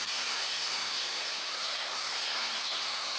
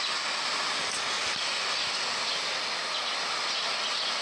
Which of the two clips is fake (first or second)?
first